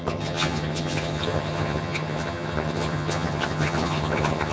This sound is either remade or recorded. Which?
remade